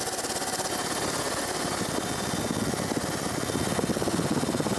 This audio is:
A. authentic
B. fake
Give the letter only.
A